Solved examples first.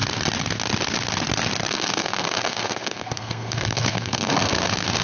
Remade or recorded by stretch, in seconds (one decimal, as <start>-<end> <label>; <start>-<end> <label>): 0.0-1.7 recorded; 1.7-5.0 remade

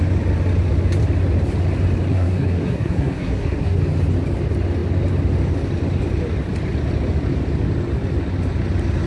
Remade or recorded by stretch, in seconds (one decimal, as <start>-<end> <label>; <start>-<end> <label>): 0.0-2.1 recorded; 2.1-3.8 remade; 3.8-9.1 recorded

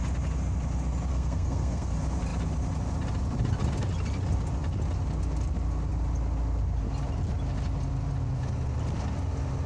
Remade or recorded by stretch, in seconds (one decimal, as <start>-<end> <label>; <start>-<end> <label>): 0.0-1.1 recorded; 1.1-1.9 remade; 1.9-9.7 recorded